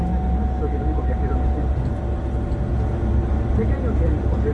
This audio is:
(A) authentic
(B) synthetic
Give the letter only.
A